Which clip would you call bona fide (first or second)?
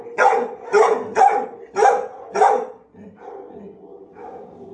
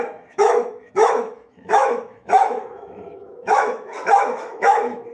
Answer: first